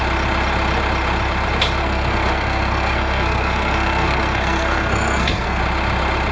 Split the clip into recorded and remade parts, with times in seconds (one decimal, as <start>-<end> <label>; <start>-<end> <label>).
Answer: 0.0-1.8 recorded; 1.8-5.6 remade; 5.6-6.3 recorded

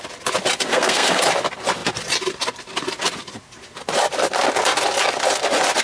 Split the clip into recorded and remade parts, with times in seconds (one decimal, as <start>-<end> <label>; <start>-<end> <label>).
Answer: 0.0-0.7 recorded; 0.7-1.2 remade; 1.2-5.8 recorded

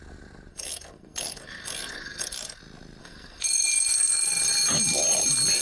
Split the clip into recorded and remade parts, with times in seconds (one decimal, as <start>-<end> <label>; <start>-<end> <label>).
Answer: 0.0-0.5 recorded; 0.5-2.6 remade; 2.6-3.0 recorded; 3.0-4.4 remade; 4.4-5.6 recorded

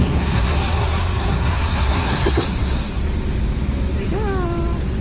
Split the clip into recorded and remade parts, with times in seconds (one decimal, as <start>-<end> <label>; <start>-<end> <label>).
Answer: 0.0-3.0 remade; 3.0-5.0 recorded

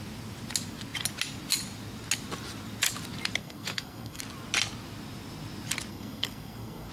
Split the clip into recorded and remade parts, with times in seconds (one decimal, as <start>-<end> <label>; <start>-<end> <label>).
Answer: 0.0-3.4 recorded; 3.4-4.2 remade; 4.2-5.9 recorded; 5.9-6.9 remade

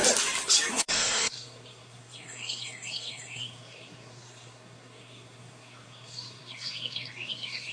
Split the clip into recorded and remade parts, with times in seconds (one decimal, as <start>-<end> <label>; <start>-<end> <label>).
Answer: 0.0-0.7 recorded; 0.7-7.7 remade

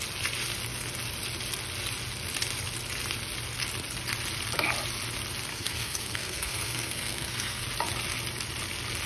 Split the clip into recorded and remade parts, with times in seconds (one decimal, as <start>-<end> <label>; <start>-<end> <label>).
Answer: 0.0-5.5 recorded; 5.5-7.6 remade; 7.6-9.1 recorded

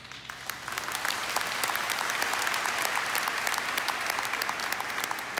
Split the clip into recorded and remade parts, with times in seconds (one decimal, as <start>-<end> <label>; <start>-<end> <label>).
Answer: 0.0-5.4 recorded